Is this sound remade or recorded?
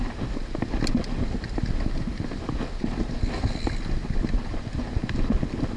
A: recorded